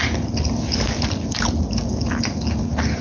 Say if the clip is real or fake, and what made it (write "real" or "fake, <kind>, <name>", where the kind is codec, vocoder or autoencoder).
real